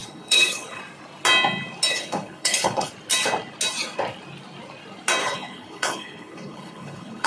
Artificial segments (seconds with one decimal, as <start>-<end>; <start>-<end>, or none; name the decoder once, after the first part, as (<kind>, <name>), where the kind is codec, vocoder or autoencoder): 0.0-0.8 (codec, HILCodec); 1.9-2.9; 5.2-7.3